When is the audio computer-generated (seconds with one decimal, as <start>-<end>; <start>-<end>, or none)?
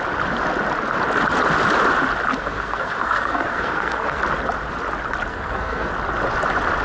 2.3-4.2; 5.3-5.9